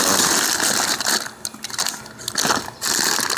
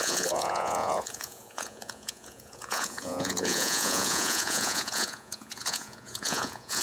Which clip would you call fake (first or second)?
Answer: second